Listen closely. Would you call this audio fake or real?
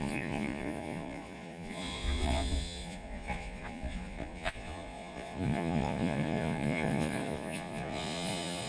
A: fake